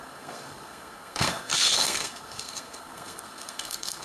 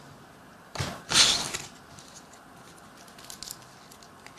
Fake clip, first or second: first